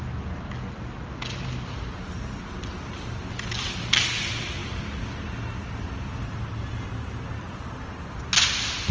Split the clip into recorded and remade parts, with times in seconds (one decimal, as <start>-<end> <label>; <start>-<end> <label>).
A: 0.0-8.9 recorded